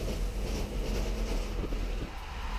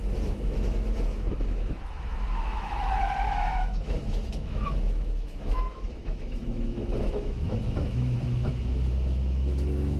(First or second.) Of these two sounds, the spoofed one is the second